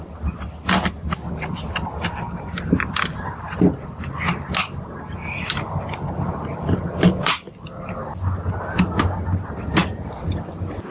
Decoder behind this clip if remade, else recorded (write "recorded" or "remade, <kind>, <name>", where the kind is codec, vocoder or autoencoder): recorded